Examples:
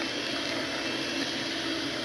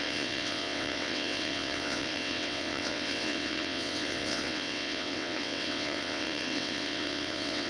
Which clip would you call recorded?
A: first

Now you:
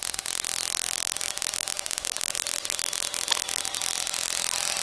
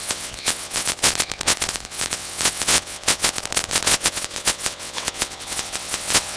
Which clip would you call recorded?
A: first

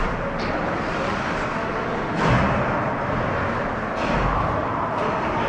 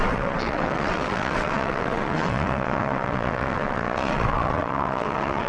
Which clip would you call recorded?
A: first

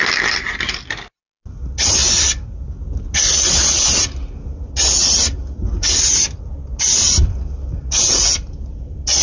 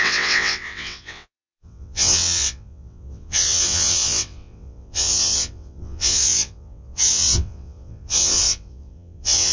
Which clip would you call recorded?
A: first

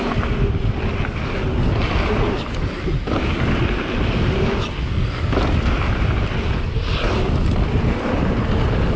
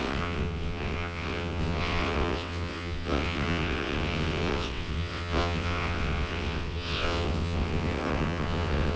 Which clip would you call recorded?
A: first